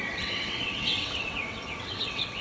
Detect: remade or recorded remade